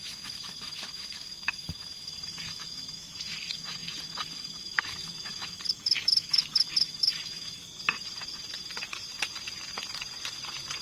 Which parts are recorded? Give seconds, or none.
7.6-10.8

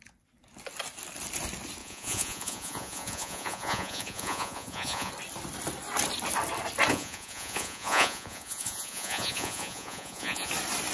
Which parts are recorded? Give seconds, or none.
0.0-1.8; 5.1-6.9; 10.5-10.9

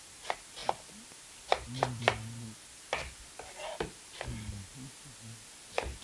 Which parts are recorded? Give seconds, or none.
4.7-6.0

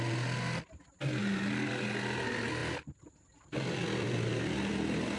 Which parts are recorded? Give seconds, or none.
0.0-5.2